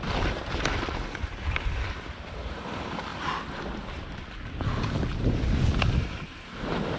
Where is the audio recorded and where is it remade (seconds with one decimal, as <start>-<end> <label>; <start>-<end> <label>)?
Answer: 0.0-7.0 recorded